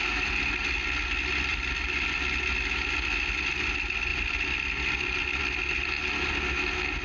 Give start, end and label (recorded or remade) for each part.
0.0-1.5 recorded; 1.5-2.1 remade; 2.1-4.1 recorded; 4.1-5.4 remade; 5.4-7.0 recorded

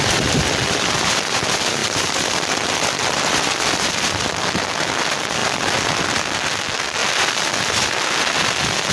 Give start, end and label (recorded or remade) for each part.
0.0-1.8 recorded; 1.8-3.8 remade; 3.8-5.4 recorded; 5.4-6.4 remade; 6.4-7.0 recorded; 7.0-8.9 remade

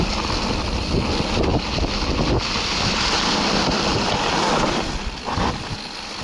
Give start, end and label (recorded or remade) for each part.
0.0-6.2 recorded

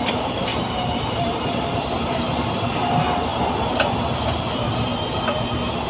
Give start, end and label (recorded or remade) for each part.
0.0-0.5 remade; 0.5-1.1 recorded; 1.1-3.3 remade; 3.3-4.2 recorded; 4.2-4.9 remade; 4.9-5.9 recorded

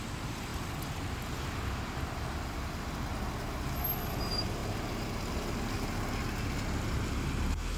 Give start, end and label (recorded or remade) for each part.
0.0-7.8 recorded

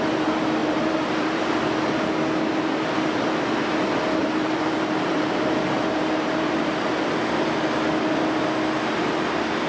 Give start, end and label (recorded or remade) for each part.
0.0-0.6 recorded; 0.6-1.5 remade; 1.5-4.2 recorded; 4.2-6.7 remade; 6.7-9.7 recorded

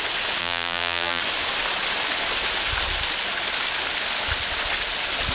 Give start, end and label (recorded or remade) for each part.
0.0-0.4 recorded; 0.4-1.2 remade; 1.2-5.3 recorded

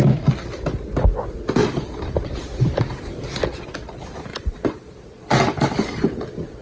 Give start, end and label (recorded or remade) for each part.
0.0-1.6 recorded; 1.6-3.7 remade; 3.7-4.3 recorded; 4.3-6.6 remade